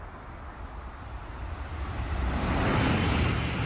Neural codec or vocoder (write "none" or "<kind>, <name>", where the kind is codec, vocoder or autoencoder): none